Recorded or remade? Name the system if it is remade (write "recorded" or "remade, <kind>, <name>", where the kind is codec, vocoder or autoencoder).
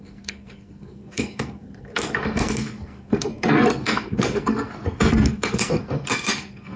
remade, codec, SNAC